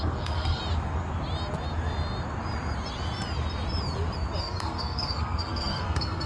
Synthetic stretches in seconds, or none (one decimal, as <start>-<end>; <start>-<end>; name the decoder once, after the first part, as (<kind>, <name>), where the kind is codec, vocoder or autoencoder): 0.0-0.6 (codec, SNAC); 4.4-6.3